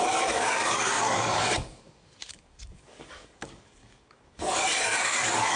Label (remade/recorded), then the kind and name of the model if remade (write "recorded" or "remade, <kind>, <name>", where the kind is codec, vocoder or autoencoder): remade, codec, DAC